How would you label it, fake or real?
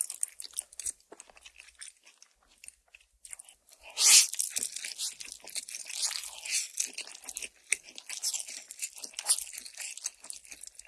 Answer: real